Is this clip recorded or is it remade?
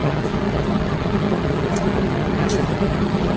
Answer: remade